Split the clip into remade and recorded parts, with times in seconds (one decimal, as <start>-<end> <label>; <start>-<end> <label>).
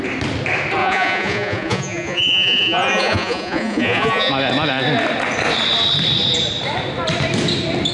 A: 0.0-0.8 recorded; 0.8-4.3 remade; 4.3-7.9 recorded